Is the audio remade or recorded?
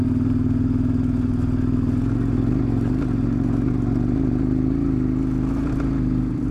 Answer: recorded